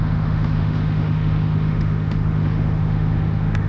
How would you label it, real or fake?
fake